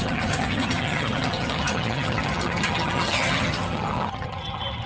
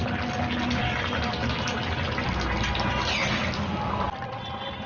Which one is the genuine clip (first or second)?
second